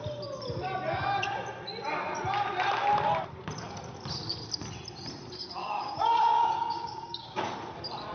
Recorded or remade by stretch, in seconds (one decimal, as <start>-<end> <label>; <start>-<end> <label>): 0.0-5.6 recorded; 5.6-7.4 remade; 7.4-8.1 recorded